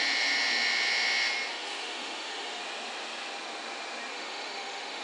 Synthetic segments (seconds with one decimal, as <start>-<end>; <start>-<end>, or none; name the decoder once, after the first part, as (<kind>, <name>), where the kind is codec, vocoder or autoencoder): 1.5-2.6 (autoencoder, DAC-VAE); 4.1-5.0